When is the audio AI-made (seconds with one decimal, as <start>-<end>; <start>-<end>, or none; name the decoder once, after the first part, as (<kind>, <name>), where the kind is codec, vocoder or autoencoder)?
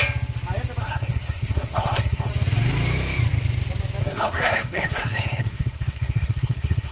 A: 0.8-2.3 (codec, SNAC); 4.0-6.9